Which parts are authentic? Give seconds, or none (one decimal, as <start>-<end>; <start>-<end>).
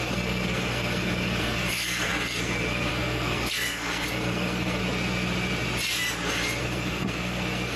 4.8-6.6